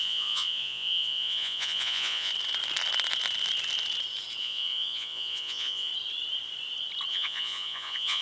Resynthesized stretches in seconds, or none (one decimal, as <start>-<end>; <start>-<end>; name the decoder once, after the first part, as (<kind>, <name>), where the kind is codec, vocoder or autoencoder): 0.0-2.3 (vocoder, Vocos); 4.4-5.9; 7.1-8.2